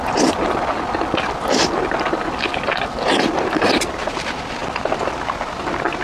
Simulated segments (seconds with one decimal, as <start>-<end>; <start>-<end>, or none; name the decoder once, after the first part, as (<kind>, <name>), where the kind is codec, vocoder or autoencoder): none